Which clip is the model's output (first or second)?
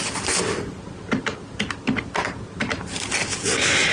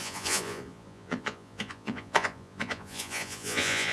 second